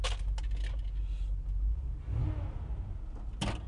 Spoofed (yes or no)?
no